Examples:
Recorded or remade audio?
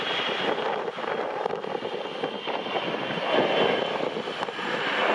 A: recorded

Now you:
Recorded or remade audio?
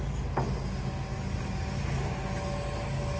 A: recorded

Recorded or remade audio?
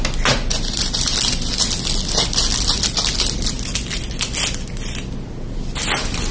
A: recorded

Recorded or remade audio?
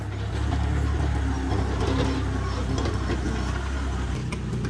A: recorded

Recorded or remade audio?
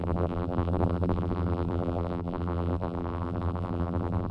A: remade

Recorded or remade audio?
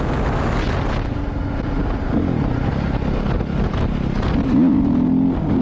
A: recorded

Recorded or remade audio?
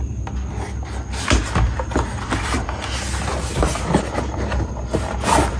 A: recorded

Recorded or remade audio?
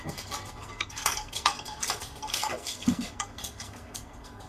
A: remade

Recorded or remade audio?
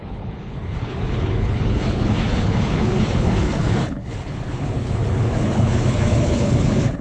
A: remade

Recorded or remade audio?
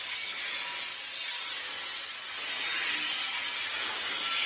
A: recorded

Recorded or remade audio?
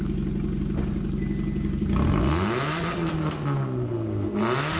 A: recorded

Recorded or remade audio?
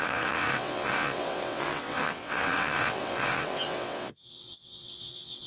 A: remade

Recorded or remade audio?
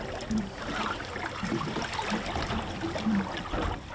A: recorded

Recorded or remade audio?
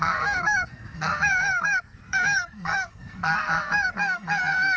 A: remade